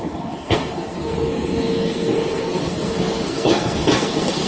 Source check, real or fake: fake